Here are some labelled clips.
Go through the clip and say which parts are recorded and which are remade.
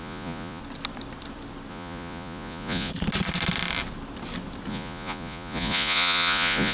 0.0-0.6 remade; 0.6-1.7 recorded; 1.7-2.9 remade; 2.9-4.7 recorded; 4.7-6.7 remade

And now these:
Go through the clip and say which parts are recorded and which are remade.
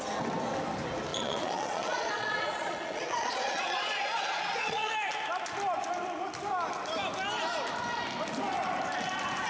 0.0-1.1 recorded; 1.1-4.9 remade; 4.9-9.5 recorded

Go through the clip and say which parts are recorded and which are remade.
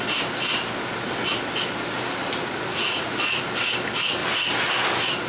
0.0-2.7 recorded; 2.7-3.4 remade; 3.4-5.3 recorded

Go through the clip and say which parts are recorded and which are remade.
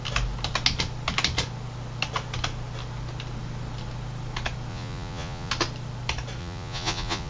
0.0-4.7 recorded; 4.7-5.5 remade; 5.5-6.4 recorded; 6.4-7.3 remade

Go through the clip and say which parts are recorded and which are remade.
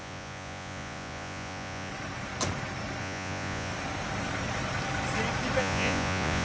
0.0-1.9 remade; 1.9-3.0 recorded; 3.0-3.7 remade; 3.7-5.6 recorded; 5.6-6.4 remade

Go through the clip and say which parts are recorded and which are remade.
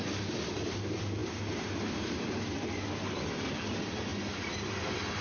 0.0-5.2 recorded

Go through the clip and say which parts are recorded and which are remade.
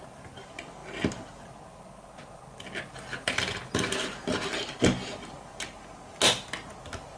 0.0-7.2 recorded